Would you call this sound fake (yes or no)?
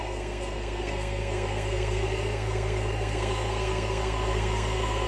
yes